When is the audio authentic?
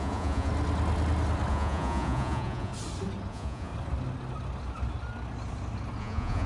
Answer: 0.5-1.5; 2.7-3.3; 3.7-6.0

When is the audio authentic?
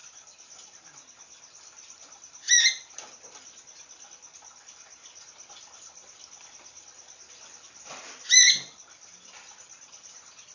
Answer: 0.0-10.5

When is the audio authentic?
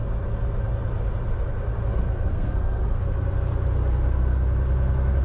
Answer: 0.0-2.3; 3.0-5.2